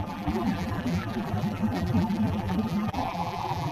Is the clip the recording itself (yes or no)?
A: no